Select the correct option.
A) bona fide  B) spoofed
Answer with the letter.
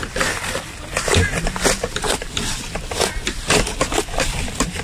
A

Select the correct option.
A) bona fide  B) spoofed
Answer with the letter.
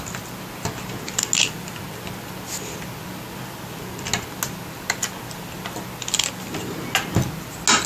A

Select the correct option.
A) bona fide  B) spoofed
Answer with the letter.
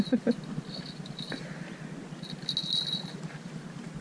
A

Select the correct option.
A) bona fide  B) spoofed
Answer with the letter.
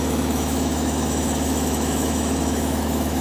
B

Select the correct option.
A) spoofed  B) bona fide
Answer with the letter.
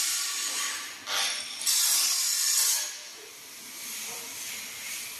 B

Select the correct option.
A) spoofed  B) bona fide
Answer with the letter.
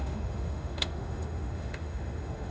A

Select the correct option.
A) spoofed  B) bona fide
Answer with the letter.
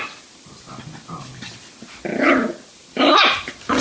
B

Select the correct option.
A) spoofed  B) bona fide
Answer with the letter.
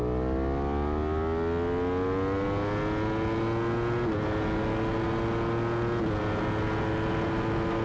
B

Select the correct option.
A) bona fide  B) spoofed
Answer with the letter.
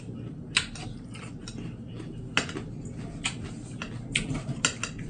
A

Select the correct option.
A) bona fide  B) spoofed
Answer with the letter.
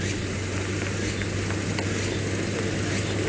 A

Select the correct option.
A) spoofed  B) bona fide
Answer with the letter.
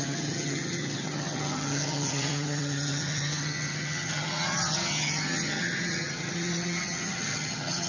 A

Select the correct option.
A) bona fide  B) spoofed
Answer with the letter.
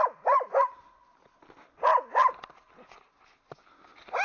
A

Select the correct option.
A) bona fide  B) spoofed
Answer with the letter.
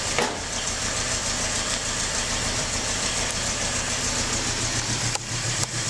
B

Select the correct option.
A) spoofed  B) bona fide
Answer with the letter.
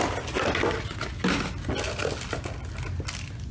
B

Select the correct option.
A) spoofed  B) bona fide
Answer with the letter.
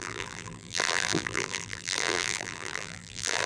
A